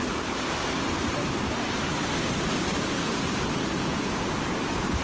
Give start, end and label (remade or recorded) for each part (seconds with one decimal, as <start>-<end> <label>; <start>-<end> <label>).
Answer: 0.0-5.0 recorded